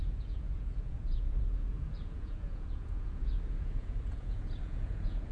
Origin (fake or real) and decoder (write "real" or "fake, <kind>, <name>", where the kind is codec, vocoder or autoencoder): fake, vocoder, Vocos